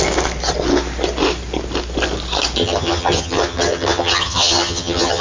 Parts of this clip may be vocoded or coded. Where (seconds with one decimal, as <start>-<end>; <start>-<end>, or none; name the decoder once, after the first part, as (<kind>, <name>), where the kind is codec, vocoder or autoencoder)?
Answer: 2.6-5.2 (vocoder, HiFi-GAN)